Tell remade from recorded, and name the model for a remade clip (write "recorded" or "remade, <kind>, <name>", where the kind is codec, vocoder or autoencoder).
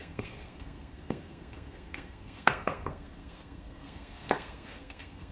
remade, codec, SNAC